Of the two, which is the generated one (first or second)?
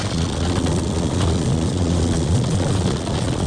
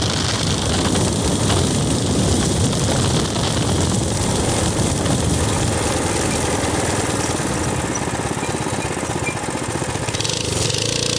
first